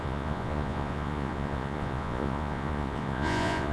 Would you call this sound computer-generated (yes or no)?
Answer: yes